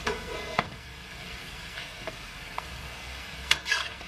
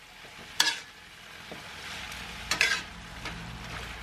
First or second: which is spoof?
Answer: first